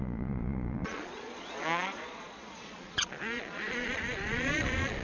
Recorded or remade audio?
remade